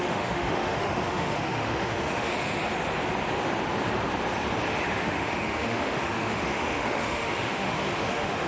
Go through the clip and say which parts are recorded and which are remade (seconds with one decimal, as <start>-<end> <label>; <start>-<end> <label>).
0.0-2.3 remade; 2.3-5.0 recorded; 5.0-8.5 remade